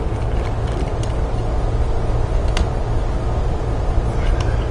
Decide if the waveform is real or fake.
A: real